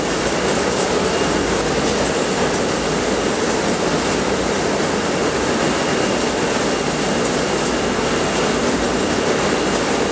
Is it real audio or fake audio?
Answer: real